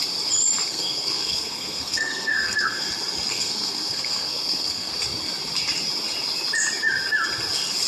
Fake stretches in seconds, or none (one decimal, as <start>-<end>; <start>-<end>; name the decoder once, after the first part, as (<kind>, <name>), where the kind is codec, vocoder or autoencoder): 0.7-2.9 (codec, SNAC); 3.3-4.9